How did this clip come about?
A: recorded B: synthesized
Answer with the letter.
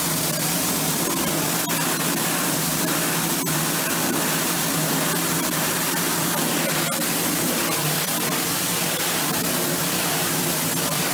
A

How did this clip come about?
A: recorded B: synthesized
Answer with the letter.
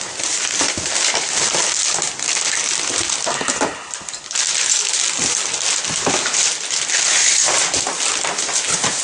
A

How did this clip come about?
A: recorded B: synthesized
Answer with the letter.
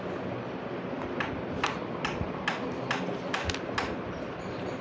A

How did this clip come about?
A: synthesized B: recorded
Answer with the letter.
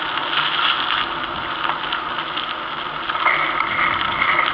B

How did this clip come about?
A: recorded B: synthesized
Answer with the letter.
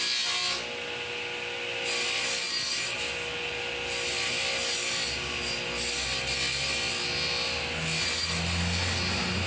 A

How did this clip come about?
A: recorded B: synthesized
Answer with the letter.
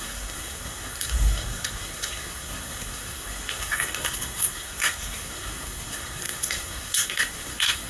B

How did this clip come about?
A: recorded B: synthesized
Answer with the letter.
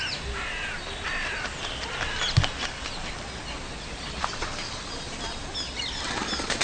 A